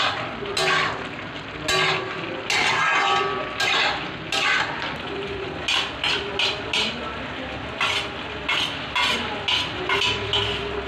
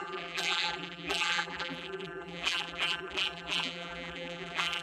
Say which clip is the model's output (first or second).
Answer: second